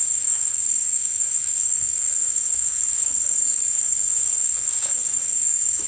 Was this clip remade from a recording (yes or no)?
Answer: yes